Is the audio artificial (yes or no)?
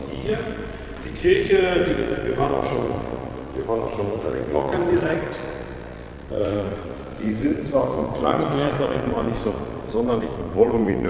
yes